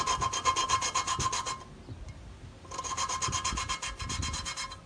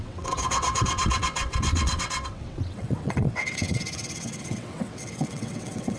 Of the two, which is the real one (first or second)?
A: first